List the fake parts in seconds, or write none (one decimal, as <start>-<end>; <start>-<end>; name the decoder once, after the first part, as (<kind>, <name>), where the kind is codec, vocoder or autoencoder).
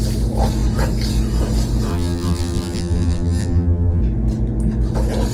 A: 1.9-4.0 (vocoder, BigVGAN v2)